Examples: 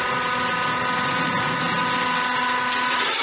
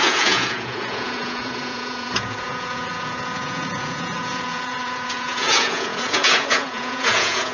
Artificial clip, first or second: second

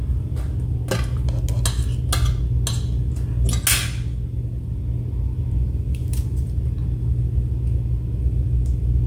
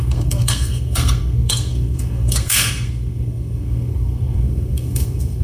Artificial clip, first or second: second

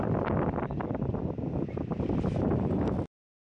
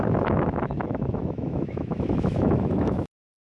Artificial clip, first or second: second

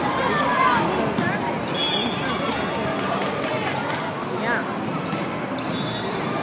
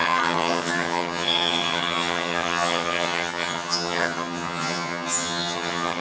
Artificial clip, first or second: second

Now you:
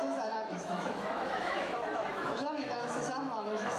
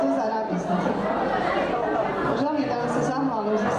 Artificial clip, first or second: first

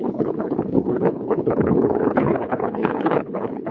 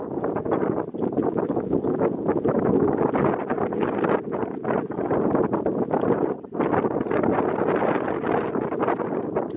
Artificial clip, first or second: first